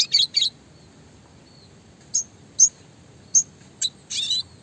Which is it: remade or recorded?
recorded